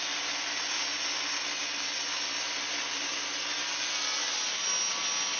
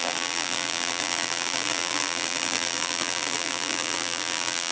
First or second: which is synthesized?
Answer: second